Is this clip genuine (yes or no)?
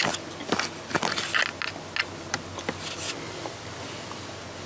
yes